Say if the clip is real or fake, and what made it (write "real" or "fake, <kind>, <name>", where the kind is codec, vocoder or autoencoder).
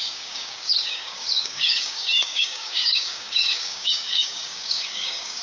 fake, codec, DAC